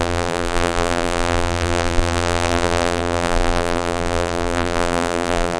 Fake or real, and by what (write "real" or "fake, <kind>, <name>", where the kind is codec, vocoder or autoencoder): fake, vocoder, BigVGAN v2